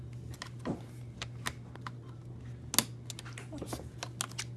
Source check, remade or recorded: recorded